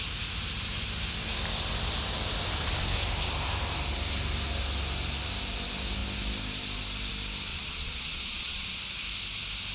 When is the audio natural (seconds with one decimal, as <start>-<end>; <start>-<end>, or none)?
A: 0.0-7.5; 8.8-9.7